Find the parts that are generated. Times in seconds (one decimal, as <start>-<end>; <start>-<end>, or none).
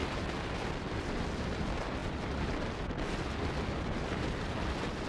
none